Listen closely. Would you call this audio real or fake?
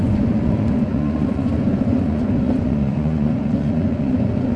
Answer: fake